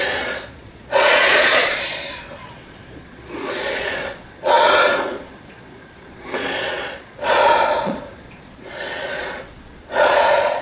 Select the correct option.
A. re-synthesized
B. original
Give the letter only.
A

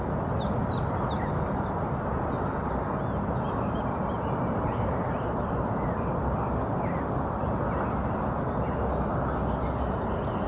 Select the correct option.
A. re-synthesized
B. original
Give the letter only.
B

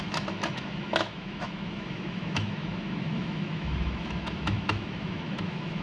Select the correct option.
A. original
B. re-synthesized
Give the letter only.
B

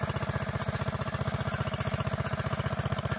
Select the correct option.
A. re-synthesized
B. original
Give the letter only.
B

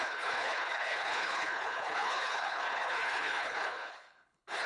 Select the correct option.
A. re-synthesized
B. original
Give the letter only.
A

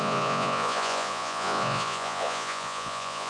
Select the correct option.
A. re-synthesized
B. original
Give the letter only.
A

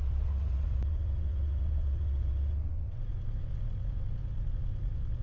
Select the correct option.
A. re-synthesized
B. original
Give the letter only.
A